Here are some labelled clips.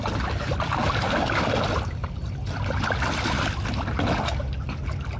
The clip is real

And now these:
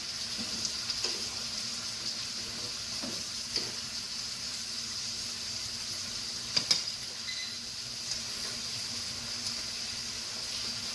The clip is real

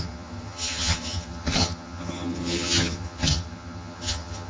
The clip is fake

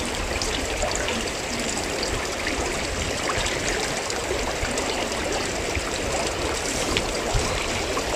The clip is fake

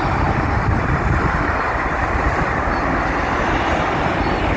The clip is real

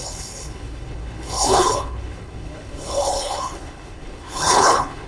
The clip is fake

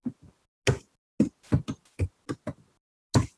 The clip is real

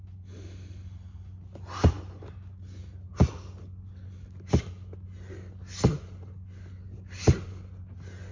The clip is real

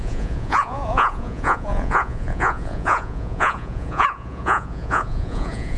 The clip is fake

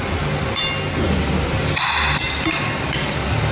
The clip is real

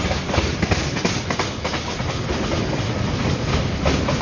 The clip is real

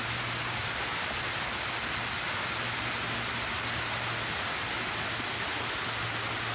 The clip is real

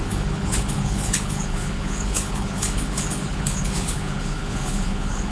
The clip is fake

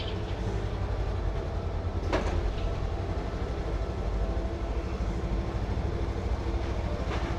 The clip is real